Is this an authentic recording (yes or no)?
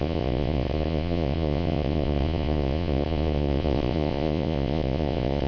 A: no